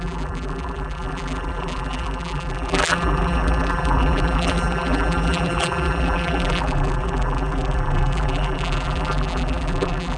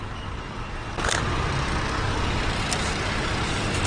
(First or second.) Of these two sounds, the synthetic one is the first